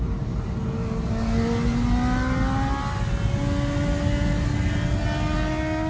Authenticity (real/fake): real